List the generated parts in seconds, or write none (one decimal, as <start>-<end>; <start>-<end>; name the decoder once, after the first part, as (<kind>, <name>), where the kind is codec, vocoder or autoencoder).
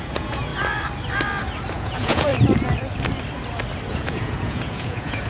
0.0-0.5 (vocoder, Vocos); 1.7-2.3; 3.9-5.3